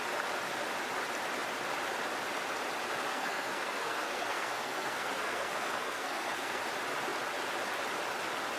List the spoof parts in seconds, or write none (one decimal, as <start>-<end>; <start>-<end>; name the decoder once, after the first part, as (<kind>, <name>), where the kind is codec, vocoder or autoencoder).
3.1-6.6 (codec, SNAC)